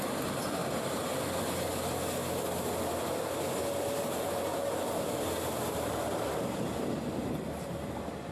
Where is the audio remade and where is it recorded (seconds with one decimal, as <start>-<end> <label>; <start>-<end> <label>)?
0.0-8.3 recorded